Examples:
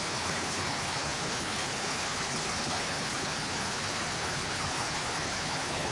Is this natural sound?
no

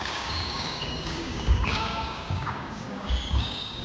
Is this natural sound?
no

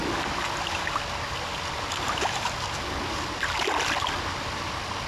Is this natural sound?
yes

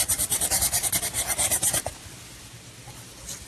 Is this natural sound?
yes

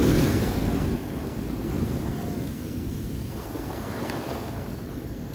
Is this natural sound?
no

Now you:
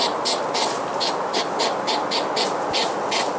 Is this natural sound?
yes